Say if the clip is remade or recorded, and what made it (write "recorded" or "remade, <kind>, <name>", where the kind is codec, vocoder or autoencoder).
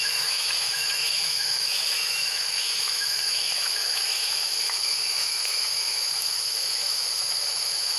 remade, autoencoder, DAC-VAE